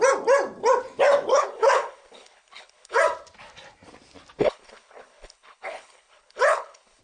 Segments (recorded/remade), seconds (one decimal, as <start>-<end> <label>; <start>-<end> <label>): 0.0-1.3 recorded; 1.3-3.0 remade; 3.0-4.4 recorded; 4.4-7.0 remade